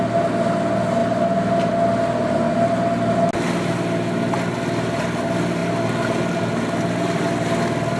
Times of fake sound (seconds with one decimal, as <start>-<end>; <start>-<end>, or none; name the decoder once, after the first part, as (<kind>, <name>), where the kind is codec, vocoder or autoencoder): none